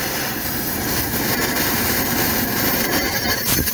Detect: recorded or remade remade